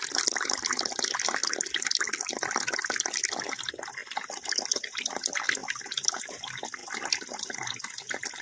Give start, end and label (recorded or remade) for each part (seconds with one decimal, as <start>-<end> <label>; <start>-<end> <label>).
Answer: 0.0-5.6 recorded; 5.6-6.2 remade; 6.2-8.4 recorded